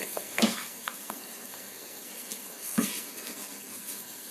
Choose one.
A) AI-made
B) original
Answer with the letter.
A